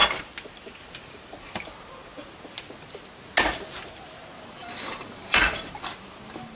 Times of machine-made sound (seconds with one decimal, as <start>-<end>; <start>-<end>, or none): 4.6-5.7